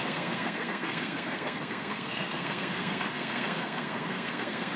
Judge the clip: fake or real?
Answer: fake